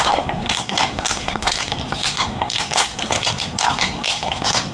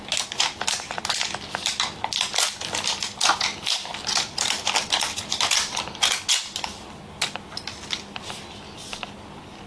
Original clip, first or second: second